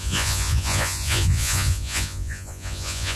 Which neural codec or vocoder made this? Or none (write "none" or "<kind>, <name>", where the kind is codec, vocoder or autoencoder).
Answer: vocoder, Vocos